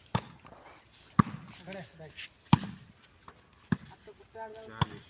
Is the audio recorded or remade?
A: recorded